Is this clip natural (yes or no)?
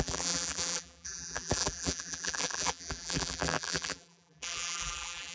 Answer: no